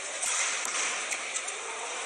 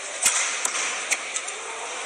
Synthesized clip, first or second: first